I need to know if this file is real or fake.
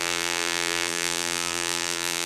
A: fake